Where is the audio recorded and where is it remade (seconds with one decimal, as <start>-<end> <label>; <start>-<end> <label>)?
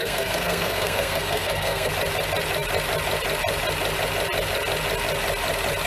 0.0-1.9 remade; 1.9-5.9 recorded